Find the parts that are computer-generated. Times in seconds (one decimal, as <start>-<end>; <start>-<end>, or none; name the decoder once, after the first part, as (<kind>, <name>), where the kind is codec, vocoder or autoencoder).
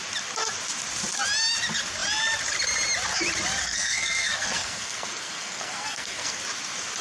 3.6-6.4 (codec, SNAC)